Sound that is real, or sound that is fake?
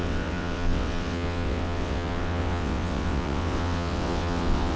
fake